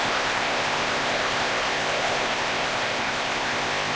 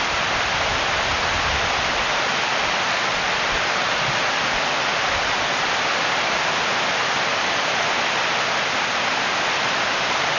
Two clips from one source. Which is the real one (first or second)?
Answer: second